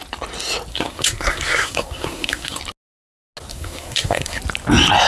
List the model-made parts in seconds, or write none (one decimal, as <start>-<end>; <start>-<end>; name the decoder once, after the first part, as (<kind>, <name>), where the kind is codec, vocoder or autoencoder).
0.7-2.6 (codec, SNAC); 3.5-4.4